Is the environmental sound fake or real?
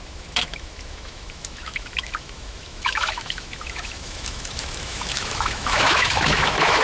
fake